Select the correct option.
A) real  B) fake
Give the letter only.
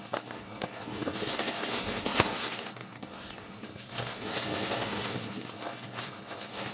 B